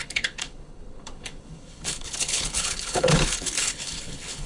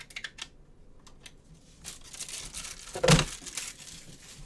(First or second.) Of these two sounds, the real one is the second